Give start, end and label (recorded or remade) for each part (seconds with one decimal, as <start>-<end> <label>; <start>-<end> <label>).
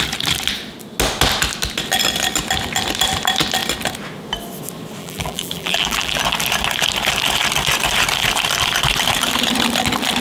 0.0-5.0 recorded; 5.0-6.2 remade; 6.2-10.2 recorded